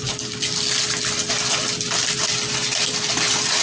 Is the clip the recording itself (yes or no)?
yes